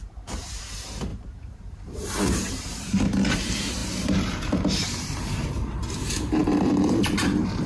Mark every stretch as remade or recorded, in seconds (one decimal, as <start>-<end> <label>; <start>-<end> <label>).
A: 0.0-7.7 remade